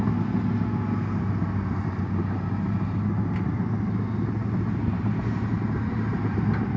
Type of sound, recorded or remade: recorded